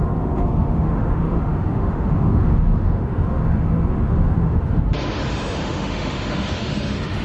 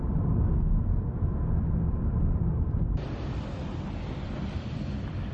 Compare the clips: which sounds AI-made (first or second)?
first